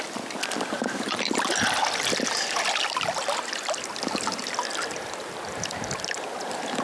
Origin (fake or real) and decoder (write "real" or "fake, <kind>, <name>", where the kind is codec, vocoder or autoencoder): real